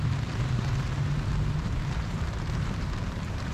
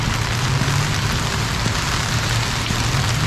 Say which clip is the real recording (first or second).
second